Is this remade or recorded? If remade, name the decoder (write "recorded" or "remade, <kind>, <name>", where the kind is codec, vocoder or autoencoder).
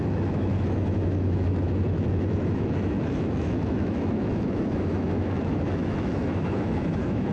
remade, autoencoder, DAC-VAE